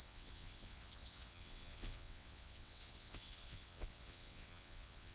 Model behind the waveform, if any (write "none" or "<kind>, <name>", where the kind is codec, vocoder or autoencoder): vocoder, WaveNeXt